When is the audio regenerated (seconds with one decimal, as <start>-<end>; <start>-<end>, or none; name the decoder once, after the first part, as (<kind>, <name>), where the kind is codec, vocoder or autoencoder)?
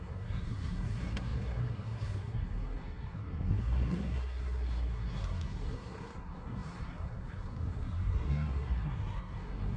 0.0-9.8 (codec, SNAC)